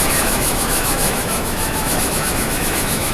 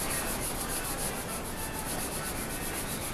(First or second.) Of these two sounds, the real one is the second